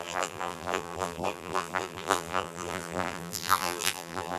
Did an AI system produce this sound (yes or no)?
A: yes